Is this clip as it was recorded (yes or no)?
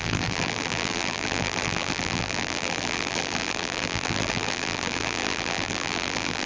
no